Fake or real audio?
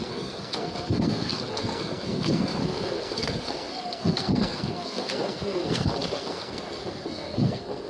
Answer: fake